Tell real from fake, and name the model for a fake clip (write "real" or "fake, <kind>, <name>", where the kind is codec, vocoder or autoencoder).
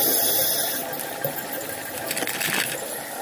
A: fake, vocoder, BigVGAN v2